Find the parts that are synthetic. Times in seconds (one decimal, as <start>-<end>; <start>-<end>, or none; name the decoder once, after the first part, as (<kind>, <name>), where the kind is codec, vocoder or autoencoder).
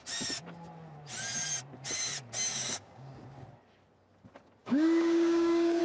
2.5-3.1 (codec, DAC); 4.6-5.8